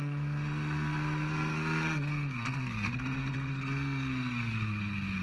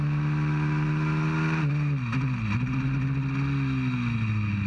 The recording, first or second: second